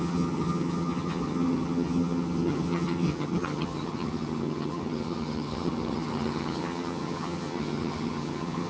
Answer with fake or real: fake